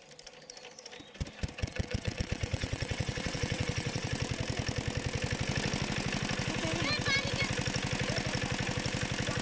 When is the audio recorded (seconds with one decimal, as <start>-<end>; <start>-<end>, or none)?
0.0-1.6; 4.1-9.4